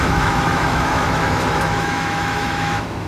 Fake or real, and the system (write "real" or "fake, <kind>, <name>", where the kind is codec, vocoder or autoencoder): fake, autoencoder, DAC-VAE